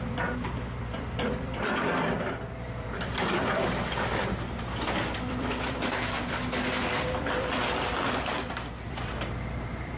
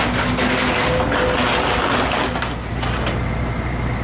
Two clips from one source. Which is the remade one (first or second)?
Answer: first